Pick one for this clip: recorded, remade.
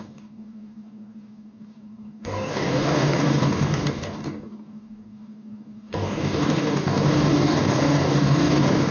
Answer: remade